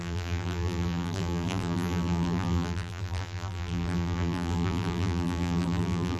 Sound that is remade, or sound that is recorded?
remade